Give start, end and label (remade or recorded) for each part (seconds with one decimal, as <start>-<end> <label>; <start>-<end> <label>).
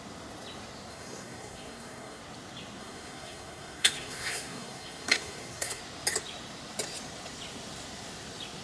0.0-0.9 recorded; 0.9-2.2 remade; 2.2-2.8 recorded; 2.8-5.8 remade; 5.8-8.6 recorded